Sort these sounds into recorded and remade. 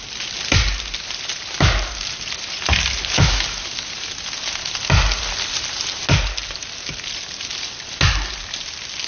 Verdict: recorded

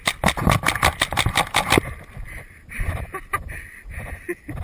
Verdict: recorded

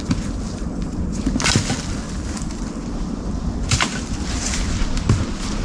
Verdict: recorded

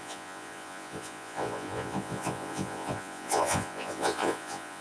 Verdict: remade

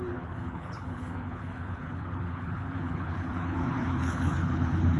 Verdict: remade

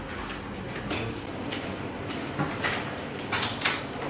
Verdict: recorded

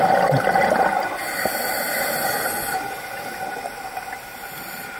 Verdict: recorded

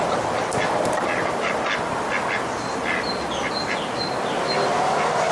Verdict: recorded